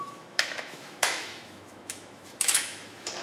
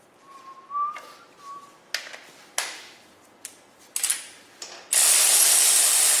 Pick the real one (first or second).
second